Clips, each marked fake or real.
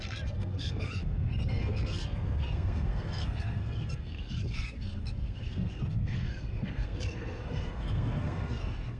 fake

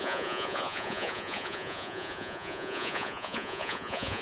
fake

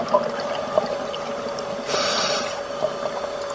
real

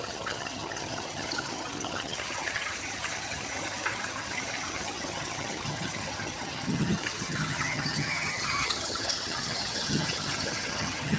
fake